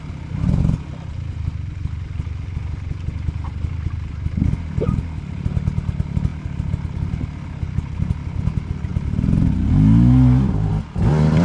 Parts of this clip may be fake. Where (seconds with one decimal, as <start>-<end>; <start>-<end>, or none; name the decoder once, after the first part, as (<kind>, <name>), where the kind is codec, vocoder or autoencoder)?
none